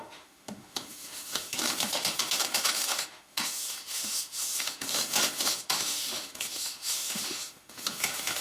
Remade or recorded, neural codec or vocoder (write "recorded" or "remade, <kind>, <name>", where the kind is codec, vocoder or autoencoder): remade, autoencoder, DAC-VAE